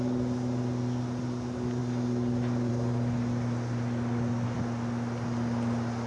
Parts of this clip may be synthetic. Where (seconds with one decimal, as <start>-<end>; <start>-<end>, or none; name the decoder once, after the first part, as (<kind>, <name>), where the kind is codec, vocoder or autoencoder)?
none